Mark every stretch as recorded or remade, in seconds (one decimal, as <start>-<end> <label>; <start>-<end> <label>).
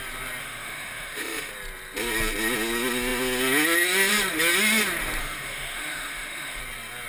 0.0-0.4 recorded; 0.4-1.5 remade; 1.5-5.2 recorded; 5.2-6.6 remade; 6.6-7.1 recorded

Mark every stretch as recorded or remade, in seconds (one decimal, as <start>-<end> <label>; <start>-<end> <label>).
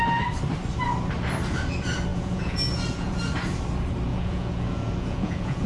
0.0-2.1 recorded; 2.1-3.2 remade; 3.2-4.1 recorded; 4.1-5.7 remade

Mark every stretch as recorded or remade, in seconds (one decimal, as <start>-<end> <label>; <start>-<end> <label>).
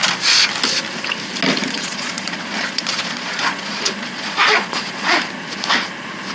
0.0-1.6 recorded; 1.6-5.2 remade; 5.2-6.3 recorded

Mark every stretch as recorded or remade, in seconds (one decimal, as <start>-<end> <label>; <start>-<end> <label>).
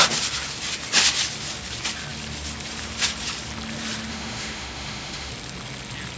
0.0-4.1 recorded; 4.1-5.3 remade; 5.3-6.2 recorded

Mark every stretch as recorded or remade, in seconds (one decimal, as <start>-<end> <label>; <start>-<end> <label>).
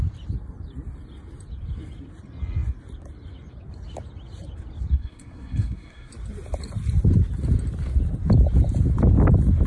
0.0-4.9 recorded; 4.9-6.1 remade; 6.1-9.7 recorded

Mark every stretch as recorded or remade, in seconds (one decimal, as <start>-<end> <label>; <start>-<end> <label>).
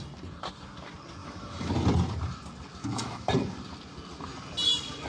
0.0-1.2 recorded; 1.2-1.7 remade; 1.7-2.8 recorded; 2.8-3.3 remade; 3.3-5.1 recorded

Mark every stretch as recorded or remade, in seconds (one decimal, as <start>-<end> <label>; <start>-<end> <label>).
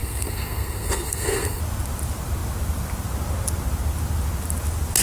0.0-1.6 remade; 1.6-5.0 recorded